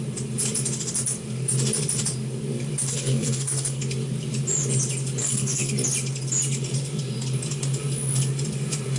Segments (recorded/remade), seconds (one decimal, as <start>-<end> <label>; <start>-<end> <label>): 0.0-2.9 recorded; 2.9-3.8 remade; 3.8-5.2 recorded; 5.2-5.7 remade; 5.7-9.0 recorded